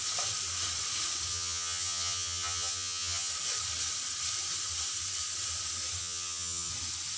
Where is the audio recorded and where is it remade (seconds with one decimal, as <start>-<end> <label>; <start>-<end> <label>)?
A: 0.0-1.3 recorded; 1.3-3.3 remade; 3.3-6.0 recorded; 6.0-6.7 remade; 6.7-7.2 recorded